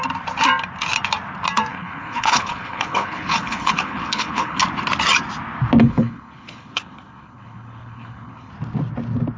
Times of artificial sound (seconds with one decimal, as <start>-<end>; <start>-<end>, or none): 1.7-4.6; 5.8-8.5